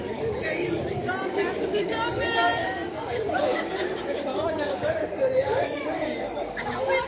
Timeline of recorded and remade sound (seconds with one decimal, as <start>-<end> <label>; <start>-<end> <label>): 0.0-7.1 remade